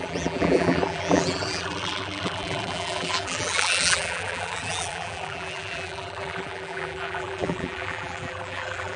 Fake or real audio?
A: fake